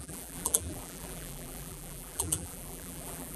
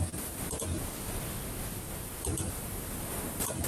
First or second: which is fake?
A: first